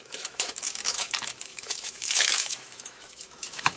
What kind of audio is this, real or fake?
fake